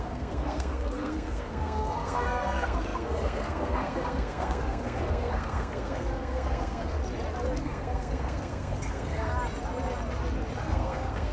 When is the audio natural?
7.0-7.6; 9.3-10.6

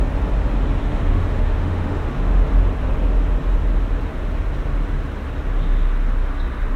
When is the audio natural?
0.0-0.8; 2.5-6.8